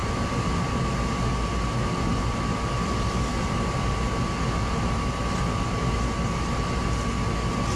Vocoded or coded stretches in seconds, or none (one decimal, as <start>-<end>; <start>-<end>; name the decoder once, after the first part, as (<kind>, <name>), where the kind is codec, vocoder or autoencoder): 0.0-0.6 (vocoder, BigVGAN v2)